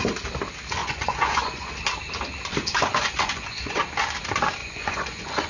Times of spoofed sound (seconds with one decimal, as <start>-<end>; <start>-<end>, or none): 0.8-1.7; 2.9-3.8; 4.6-5.5